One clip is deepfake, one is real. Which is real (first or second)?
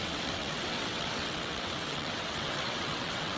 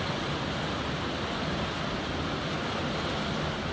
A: second